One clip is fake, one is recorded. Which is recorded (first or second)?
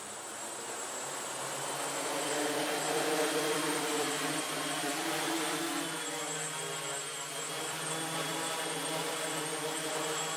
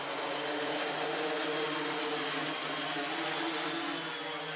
second